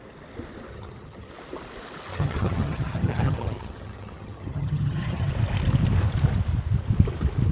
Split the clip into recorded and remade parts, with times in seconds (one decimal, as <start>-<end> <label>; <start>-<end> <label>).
0.0-0.7 recorded; 0.7-1.3 remade; 1.3-2.1 recorded; 2.1-5.3 remade; 5.3-7.5 recorded